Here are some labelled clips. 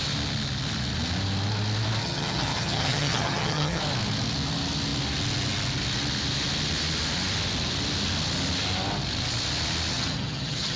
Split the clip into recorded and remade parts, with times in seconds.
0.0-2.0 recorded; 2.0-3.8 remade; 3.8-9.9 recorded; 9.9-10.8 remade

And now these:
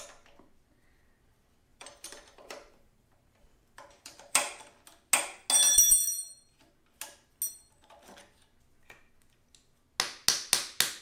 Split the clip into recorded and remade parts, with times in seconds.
0.0-1.7 recorded; 1.7-4.6 remade; 4.6-11.0 recorded

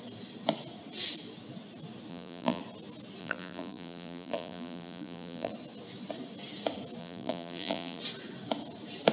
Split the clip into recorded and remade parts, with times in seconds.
0.0-2.1 recorded; 2.1-2.6 remade; 2.6-3.2 recorded; 3.2-5.5 remade; 5.5-7.0 recorded; 7.0-8.0 remade; 8.0-9.1 recorded

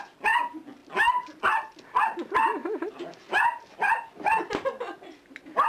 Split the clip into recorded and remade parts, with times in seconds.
0.0-5.7 recorded